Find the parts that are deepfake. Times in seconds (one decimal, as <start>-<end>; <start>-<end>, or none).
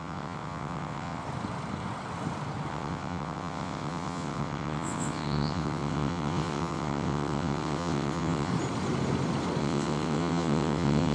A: 0.0-1.2; 2.7-8.5; 9.6-11.1